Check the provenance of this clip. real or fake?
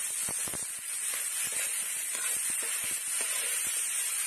real